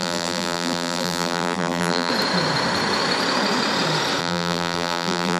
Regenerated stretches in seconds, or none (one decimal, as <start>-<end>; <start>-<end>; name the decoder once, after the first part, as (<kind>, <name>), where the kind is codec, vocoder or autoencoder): 0.0-2.1 (vocoder, BigVGAN v2); 4.2-5.4